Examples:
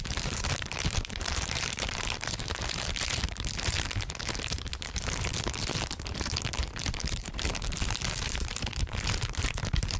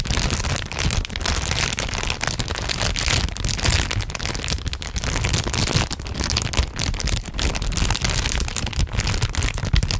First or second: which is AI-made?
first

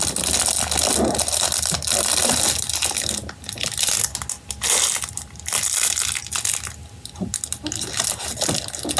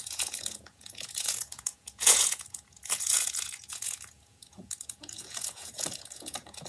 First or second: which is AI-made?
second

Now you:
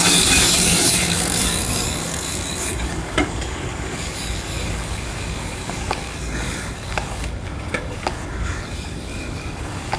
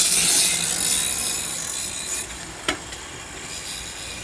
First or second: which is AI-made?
first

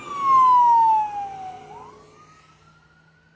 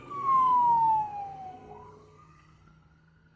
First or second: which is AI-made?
second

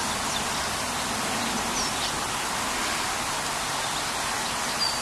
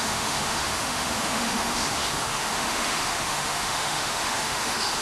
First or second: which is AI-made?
second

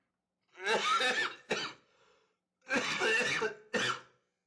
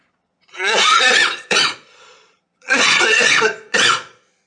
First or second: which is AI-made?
second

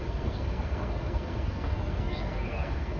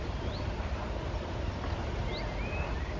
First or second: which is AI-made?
first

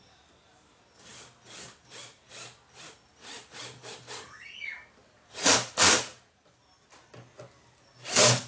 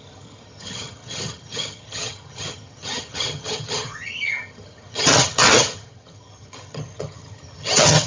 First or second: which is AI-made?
second